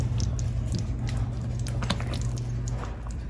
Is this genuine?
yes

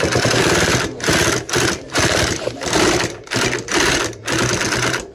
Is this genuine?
no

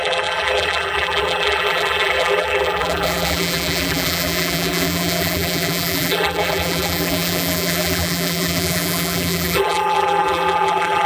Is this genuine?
no